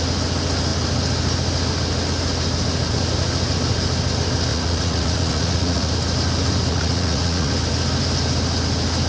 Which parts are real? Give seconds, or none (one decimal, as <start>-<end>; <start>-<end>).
0.0-4.5; 5.9-6.7; 7.5-9.1